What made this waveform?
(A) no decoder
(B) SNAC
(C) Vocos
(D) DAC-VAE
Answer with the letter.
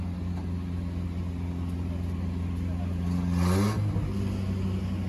A